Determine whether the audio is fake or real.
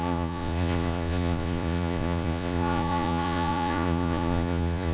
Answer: fake